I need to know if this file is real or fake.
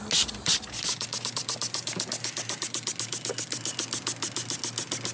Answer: real